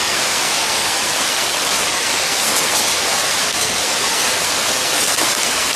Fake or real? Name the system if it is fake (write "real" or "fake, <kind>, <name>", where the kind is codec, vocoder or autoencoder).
fake, codec, SNAC